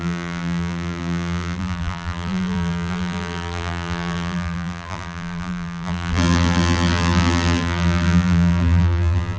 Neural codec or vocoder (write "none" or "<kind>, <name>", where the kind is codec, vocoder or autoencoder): vocoder, BigVGAN v2